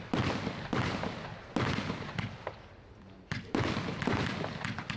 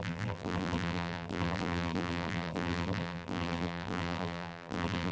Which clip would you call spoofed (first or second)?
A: second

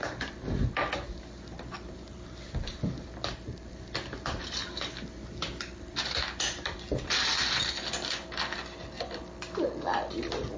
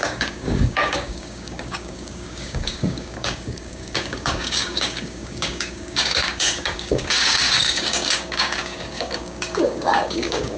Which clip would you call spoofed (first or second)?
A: second